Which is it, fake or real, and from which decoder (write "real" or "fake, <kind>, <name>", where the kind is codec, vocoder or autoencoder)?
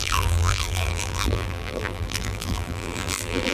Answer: fake, vocoder, BigVGAN v2